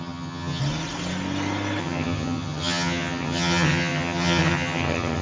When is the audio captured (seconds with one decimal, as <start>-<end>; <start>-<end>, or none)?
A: 0.6-1.8